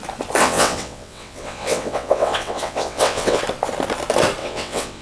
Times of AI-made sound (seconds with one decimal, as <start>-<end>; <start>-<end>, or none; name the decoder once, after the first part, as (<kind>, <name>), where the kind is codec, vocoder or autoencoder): 0.4-3.4 (vocoder, WaveNeXt); 4.4-5.0